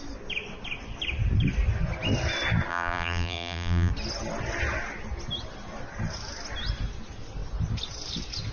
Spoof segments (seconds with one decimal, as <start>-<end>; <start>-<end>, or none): 2.7-3.9